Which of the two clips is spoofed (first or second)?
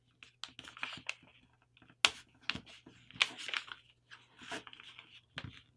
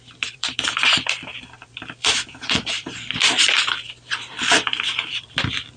second